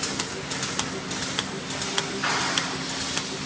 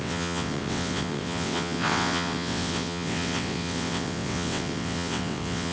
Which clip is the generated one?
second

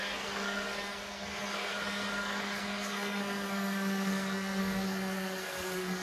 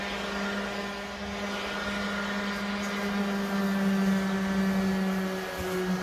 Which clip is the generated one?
first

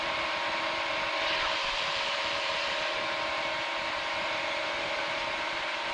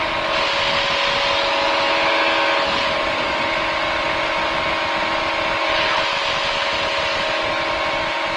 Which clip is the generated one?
first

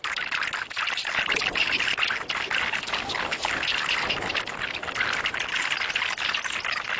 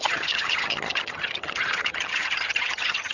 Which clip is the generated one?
second